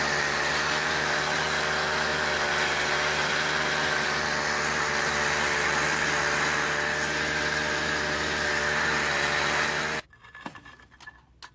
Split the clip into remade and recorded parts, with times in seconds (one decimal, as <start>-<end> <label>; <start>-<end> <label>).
0.0-11.5 recorded

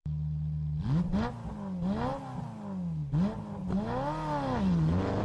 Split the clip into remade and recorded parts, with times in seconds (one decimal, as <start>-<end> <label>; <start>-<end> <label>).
0.0-5.2 recorded

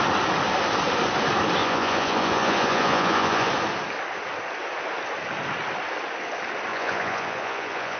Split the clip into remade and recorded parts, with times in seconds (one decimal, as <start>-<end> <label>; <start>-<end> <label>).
0.0-1.6 recorded; 1.6-3.5 remade; 3.5-6.7 recorded; 6.7-8.0 remade

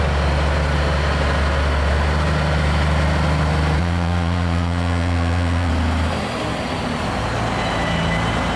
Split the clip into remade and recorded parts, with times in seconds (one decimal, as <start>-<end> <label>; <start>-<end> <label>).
0.0-3.8 recorded; 3.8-5.7 remade; 5.7-8.6 recorded